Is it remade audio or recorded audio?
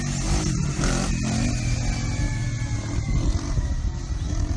recorded